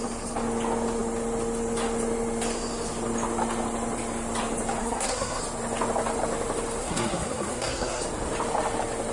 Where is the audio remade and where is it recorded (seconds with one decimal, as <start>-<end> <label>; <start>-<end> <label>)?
0.0-4.8 recorded; 4.8-5.4 remade; 5.4-6.8 recorded; 6.8-8.0 remade; 8.0-9.1 recorded